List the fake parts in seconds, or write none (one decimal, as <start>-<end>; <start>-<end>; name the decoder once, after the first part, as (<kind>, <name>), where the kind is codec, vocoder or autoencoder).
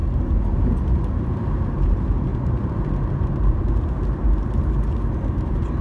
0.9-5.8 (vocoder, BigVGAN v2)